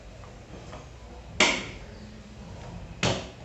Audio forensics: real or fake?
real